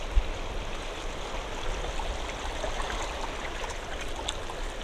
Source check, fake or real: real